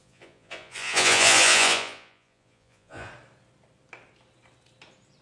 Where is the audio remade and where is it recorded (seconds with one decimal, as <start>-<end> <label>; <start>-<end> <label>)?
0.0-3.1 remade; 3.1-5.2 recorded